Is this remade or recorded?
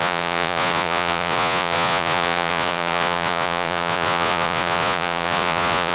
remade